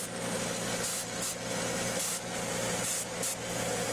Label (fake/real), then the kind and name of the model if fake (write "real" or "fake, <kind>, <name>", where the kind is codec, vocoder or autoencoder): real